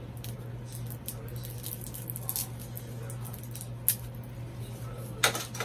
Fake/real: real